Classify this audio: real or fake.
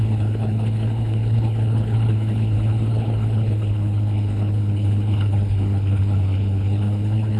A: fake